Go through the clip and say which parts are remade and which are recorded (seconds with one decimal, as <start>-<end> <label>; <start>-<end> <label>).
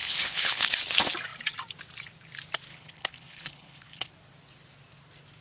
0.0-0.7 remade; 0.7-2.7 recorded; 2.7-4.1 remade; 4.1-5.4 recorded